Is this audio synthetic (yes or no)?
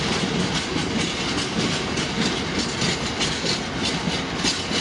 no